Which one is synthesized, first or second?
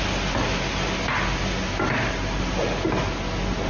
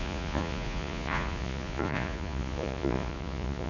second